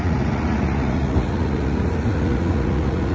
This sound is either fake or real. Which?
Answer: fake